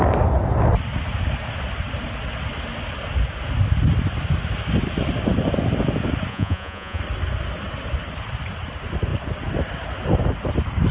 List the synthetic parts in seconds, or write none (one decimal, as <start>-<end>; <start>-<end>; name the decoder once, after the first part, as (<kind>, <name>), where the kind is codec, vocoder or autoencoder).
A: 6.3-7.0 (vocoder, Vocos)